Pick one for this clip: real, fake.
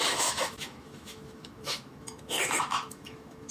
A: fake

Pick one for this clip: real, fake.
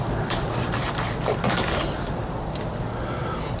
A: real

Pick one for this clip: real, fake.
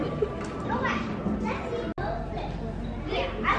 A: real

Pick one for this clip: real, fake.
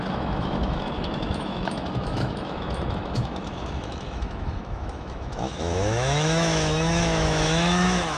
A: fake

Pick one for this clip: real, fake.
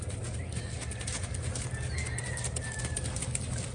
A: real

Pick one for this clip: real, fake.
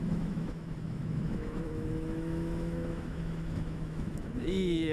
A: fake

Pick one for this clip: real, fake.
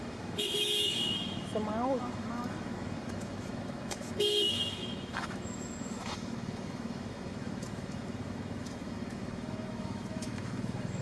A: fake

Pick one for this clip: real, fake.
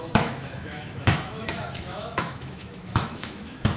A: fake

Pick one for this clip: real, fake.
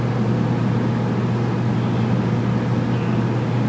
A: real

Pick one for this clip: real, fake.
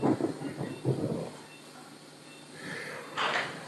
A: real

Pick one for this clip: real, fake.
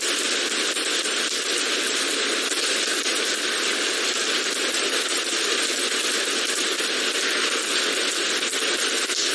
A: real